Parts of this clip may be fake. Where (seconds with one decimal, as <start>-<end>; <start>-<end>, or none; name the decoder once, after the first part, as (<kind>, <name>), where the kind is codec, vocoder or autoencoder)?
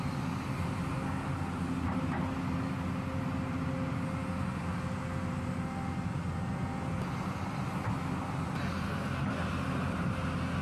none